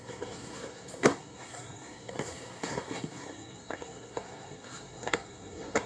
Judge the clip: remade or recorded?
remade